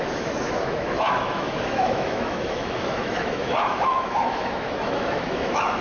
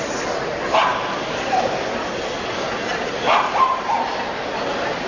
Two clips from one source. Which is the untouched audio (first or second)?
second